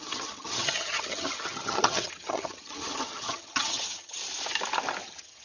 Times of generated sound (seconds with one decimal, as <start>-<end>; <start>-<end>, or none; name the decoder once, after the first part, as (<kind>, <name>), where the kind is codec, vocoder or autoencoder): 0.0-4.2 (vocoder, HiFi-GAN); 5.0-5.4